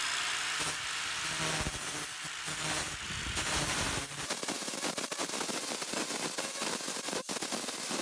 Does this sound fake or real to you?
real